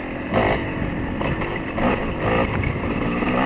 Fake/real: real